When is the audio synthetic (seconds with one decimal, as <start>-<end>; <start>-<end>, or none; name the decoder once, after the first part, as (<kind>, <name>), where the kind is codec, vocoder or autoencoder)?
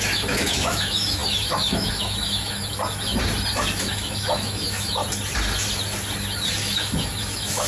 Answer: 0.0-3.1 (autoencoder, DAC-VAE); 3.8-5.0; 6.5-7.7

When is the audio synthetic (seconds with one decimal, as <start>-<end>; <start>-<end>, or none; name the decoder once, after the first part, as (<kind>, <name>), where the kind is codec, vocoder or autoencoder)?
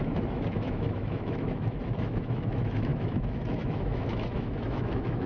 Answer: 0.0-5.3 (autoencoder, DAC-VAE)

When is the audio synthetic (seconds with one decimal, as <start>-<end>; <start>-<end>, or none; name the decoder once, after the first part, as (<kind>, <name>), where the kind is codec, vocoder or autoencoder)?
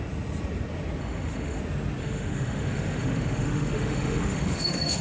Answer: 1.0-1.6 (autoencoder, DAC-VAE); 2.0-5.0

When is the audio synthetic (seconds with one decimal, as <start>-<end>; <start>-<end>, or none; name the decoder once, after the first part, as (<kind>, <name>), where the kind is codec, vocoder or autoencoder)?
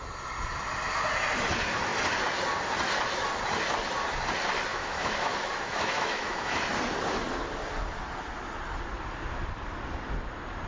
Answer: 4.7-6.6 (autoencoder, DAC-VAE)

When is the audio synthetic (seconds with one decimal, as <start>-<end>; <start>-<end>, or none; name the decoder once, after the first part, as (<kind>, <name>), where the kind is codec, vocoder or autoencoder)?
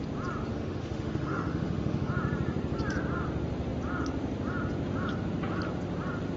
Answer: 0.5-2.1 (autoencoder, DAC-VAE)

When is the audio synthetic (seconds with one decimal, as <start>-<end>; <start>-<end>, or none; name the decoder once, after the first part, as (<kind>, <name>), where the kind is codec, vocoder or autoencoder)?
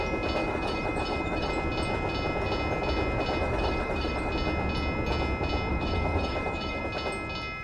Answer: 0.4-1.5 (autoencoder, DAC-VAE); 3.4-4.3; 5.7-6.8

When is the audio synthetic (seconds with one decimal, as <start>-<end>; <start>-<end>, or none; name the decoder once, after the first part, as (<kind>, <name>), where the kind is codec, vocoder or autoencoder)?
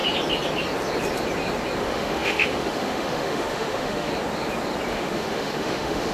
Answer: 1.8-4.1 (autoencoder, DAC-VAE); 4.9-6.1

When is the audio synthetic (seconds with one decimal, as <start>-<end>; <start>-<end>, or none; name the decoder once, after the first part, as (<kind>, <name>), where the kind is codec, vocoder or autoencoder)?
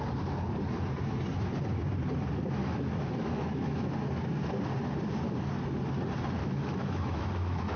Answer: 2.6-3.9 (autoencoder, DAC-VAE); 6.4-7.8